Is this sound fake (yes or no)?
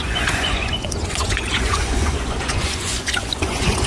yes